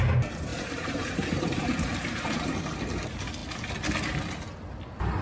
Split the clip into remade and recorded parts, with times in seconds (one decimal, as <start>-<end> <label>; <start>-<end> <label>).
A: 0.0-0.5 recorded; 0.5-2.6 remade; 2.6-5.2 recorded